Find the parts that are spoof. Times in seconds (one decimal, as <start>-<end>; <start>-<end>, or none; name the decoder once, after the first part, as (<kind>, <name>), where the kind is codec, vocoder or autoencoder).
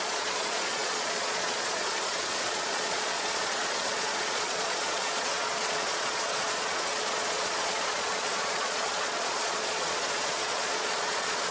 0.0-11.5 (vocoder, Vocos)